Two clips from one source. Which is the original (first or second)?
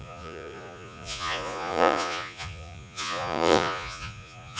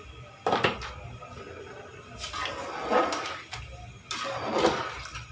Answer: second